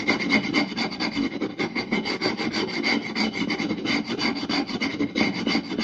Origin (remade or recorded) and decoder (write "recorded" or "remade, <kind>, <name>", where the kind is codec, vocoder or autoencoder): recorded